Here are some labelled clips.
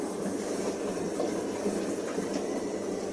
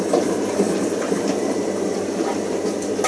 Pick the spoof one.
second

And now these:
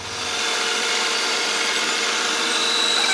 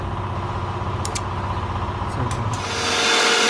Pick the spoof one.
first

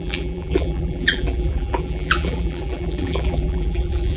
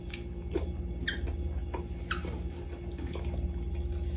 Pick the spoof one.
first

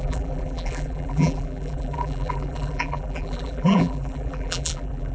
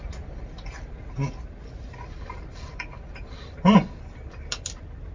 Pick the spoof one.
first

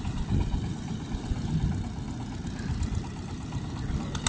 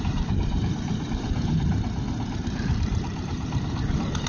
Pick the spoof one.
second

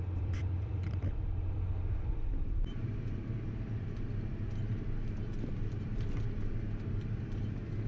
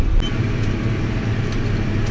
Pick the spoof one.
first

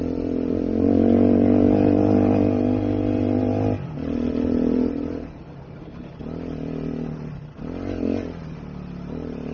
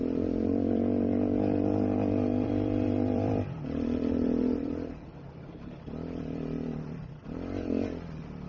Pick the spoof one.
second